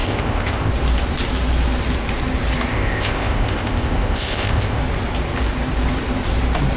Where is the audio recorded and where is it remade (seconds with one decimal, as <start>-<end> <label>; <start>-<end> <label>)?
0.0-0.7 remade; 0.7-2.7 recorded; 2.7-4.8 remade; 4.8-6.8 recorded